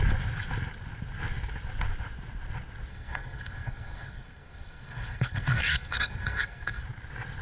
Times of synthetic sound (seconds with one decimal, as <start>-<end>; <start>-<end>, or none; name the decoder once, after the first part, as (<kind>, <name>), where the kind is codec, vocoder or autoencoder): 2.9-6.8 (codec, SNAC)